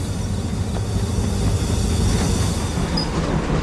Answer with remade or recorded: recorded